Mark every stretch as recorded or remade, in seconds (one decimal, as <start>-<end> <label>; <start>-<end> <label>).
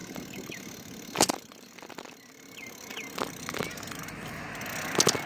0.0-5.3 recorded